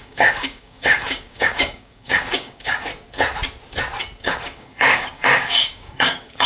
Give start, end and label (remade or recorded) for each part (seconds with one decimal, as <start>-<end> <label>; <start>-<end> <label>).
0.0-2.9 remade; 2.9-4.2 recorded; 4.2-6.5 remade